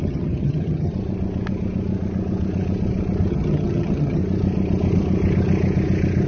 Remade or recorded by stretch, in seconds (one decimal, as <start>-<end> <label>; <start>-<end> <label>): 0.0-0.9 remade; 0.9-3.3 recorded; 3.3-4.2 remade; 4.2-6.3 recorded